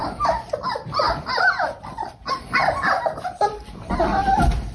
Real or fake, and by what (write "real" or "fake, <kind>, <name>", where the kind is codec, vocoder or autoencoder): fake, vocoder, BigVGAN v2